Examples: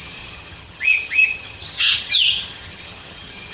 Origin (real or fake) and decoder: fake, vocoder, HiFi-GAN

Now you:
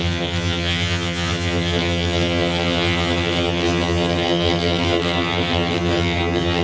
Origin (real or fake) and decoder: fake, vocoder, HiFi-GAN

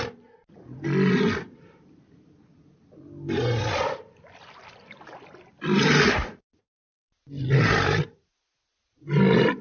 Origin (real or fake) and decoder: real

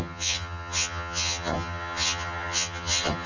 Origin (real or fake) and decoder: fake, vocoder, HiFi-GAN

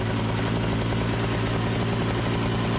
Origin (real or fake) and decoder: real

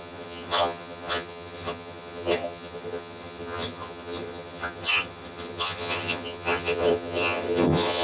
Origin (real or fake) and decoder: fake, vocoder, HiFi-GAN